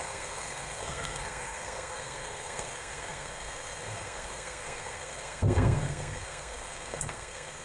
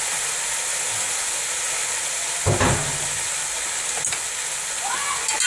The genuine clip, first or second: second